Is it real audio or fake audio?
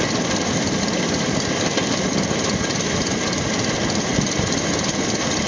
real